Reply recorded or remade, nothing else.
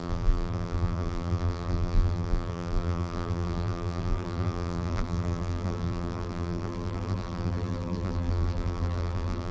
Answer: remade